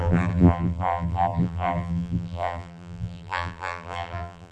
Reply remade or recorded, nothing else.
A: remade